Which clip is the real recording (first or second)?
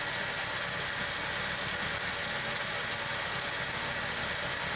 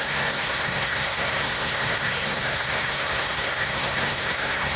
first